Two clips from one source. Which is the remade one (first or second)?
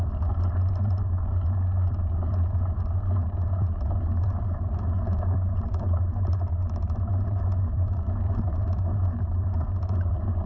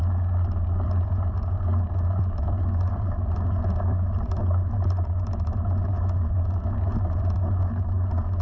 first